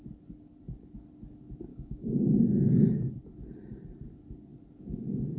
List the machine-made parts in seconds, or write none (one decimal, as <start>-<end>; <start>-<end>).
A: 1.7-3.1

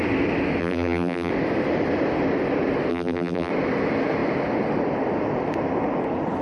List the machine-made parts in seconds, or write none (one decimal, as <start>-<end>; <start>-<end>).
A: 0.6-1.3; 2.9-3.5

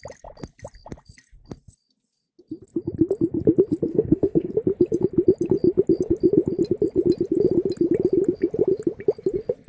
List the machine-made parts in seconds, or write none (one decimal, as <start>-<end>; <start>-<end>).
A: 3.9-4.5

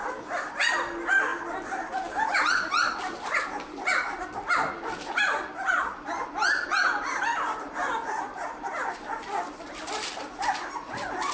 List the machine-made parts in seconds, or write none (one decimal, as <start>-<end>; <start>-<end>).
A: 0.0-1.3; 2.7-11.3

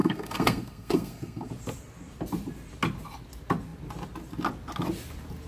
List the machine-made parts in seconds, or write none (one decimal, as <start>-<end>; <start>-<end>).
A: 0.0-1.5

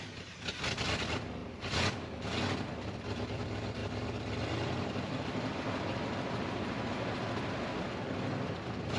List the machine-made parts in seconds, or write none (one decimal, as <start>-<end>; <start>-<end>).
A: 0.0-1.4; 2.8-9.0

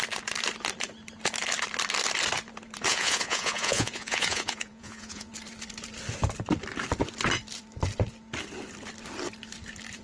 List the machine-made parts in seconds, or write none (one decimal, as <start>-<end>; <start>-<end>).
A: 2.9-5.3

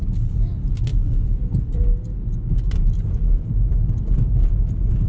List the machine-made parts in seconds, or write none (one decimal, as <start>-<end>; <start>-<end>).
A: none